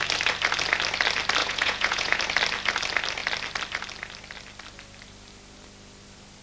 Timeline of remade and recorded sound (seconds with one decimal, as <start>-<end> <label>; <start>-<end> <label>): 0.0-1.4 recorded; 1.4-2.2 remade; 2.2-6.4 recorded